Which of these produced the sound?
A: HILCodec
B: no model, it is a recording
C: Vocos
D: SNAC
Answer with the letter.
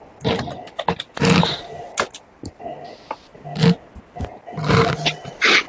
B